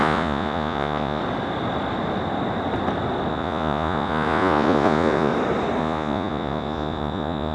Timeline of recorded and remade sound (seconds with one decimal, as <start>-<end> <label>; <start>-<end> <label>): 0.0-1.2 remade; 1.2-3.3 recorded; 3.3-5.3 remade; 5.3-5.8 recorded; 5.8-7.5 remade